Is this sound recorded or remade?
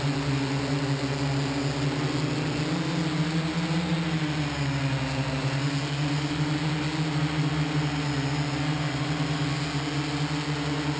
recorded